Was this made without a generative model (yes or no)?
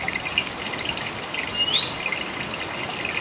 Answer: yes